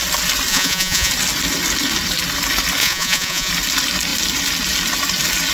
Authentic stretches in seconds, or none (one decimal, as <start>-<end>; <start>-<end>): 0.0-0.5; 1.1-2.8; 3.5-5.5